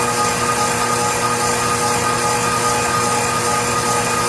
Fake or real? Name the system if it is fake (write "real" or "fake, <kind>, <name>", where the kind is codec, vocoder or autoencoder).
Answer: real